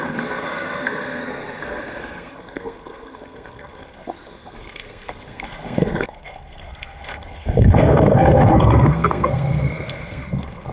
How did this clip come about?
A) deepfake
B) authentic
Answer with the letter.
A